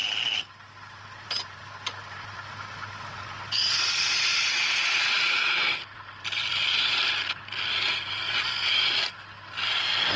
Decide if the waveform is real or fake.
real